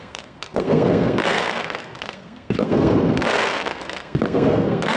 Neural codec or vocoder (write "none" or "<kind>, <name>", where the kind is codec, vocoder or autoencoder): codec, SNAC